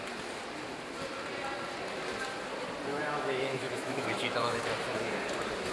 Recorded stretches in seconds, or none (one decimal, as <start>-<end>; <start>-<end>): 0.0-2.9; 4.6-5.7